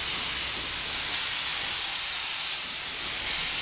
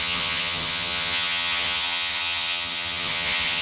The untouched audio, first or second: first